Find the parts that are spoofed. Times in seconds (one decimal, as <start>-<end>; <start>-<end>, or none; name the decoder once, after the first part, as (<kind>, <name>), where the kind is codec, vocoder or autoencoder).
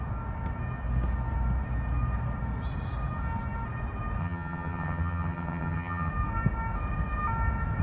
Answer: 4.2-6.1 (vocoder, HiFi-GAN)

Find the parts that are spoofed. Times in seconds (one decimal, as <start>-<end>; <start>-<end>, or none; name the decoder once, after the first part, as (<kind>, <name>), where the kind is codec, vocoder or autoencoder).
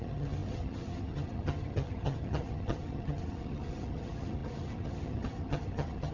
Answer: 0.0-6.1 (vocoder, HiFi-GAN)